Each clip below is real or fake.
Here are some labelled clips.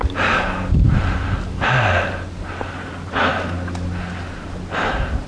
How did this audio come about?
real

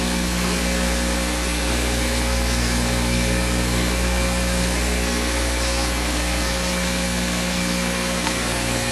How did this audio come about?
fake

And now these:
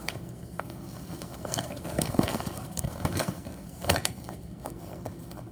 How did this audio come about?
fake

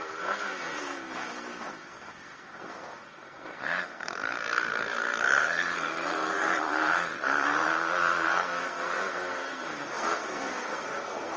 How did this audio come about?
fake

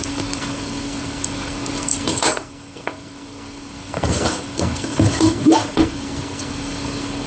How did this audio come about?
fake